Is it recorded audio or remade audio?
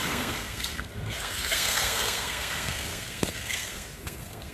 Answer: remade